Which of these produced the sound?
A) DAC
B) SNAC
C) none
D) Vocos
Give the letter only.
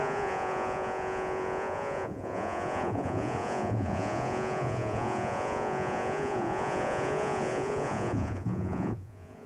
D